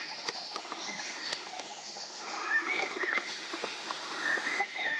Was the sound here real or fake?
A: fake